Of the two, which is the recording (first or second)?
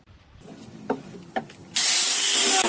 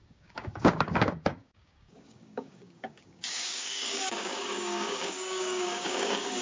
first